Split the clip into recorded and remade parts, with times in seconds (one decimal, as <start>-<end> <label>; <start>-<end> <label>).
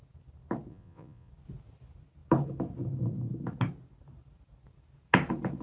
0.0-0.7 recorded; 0.7-1.3 remade; 1.3-5.6 recorded